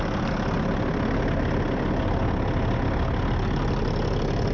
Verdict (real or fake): real